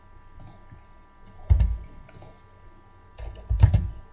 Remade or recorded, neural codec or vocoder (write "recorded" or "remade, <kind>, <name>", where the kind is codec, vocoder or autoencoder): recorded